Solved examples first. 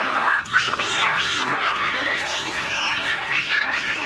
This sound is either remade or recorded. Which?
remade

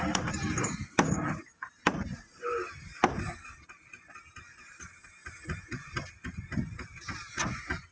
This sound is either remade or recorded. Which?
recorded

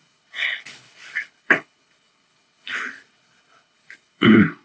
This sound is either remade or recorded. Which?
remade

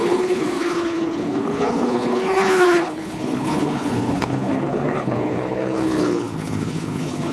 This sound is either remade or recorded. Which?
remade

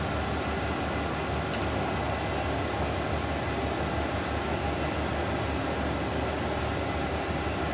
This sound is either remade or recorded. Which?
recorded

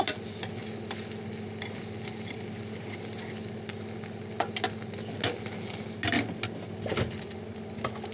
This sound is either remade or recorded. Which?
recorded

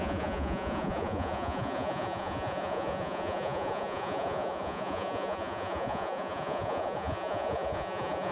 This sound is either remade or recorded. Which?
remade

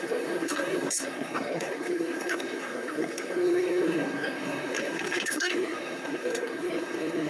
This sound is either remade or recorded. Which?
remade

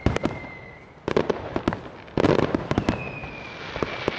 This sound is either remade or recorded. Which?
recorded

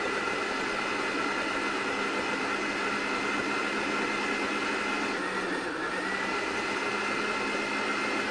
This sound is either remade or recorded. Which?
recorded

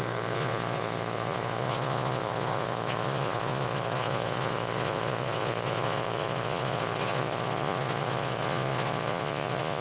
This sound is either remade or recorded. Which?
remade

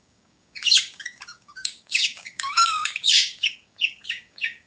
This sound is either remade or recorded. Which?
remade